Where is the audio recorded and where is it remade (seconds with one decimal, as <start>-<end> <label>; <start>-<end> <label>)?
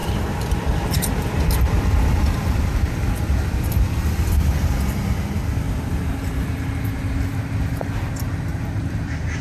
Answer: 0.0-1.4 remade; 1.4-8.5 recorded; 8.5-9.4 remade